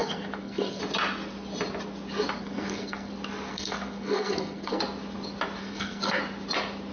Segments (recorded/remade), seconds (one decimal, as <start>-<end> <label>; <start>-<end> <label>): 0.0-0.8 remade; 0.8-2.4 recorded; 2.4-3.1 remade; 3.1-3.5 recorded; 3.5-4.8 remade; 4.8-5.6 recorded; 5.6-6.2 remade; 6.2-6.9 recorded